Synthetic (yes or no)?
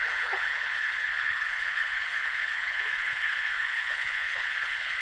yes